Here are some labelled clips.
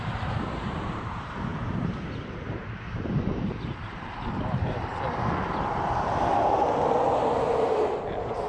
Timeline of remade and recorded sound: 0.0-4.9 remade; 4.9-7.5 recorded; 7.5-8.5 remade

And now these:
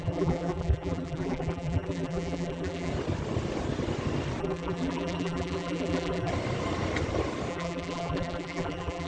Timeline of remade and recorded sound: 0.0-2.9 remade; 2.9-4.4 recorded; 4.4-6.3 remade; 6.3-7.5 recorded; 7.5-9.1 remade

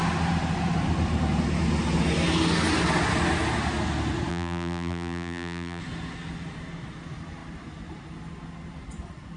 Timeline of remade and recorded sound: 0.0-4.3 recorded; 4.3-5.8 remade; 5.8-9.4 recorded

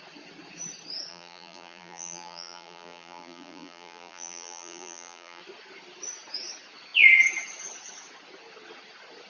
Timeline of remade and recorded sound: 0.0-1.1 recorded; 1.1-5.4 remade; 5.4-9.3 recorded

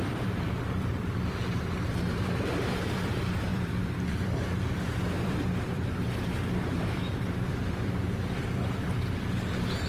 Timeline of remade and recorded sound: 0.0-9.9 remade

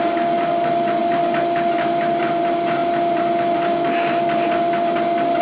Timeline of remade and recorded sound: 0.0-5.4 recorded